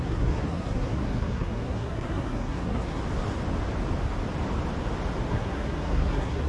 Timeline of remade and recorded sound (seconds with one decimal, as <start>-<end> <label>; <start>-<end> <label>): 0.0-3.0 remade; 3.0-5.3 recorded; 5.3-6.5 remade